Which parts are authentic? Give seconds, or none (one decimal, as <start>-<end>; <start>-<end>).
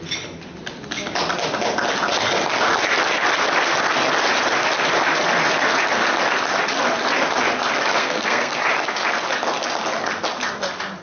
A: 0.0-8.0; 8.6-11.0